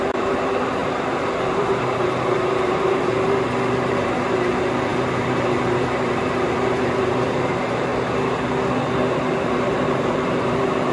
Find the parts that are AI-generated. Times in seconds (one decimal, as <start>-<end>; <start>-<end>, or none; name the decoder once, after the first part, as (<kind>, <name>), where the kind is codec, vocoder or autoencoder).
0.0-7.9 (vocoder, BigVGAN v2); 9.1-10.9